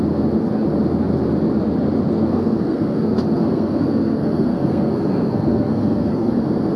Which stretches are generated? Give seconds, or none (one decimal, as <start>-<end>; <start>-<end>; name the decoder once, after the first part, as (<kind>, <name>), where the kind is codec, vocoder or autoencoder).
2.2-6.3 (codec, SNAC)